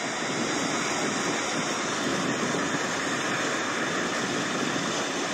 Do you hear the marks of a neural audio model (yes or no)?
no